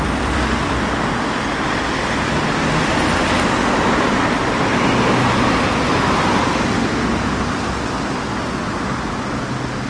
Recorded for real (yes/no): yes